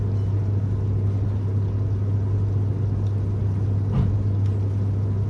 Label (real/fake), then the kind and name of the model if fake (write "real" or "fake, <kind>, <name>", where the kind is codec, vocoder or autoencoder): real